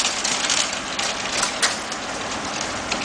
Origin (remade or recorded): remade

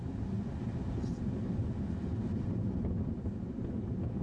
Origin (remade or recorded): recorded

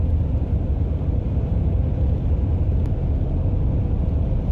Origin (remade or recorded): recorded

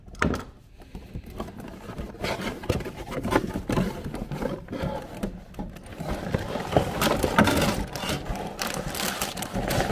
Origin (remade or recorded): recorded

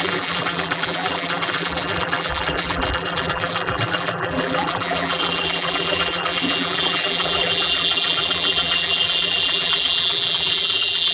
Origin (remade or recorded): remade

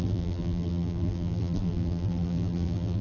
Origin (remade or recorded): remade